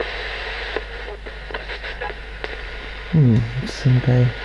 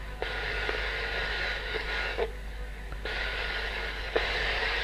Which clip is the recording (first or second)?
first